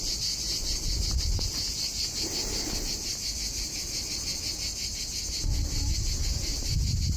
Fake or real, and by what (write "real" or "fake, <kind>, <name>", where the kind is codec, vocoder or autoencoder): real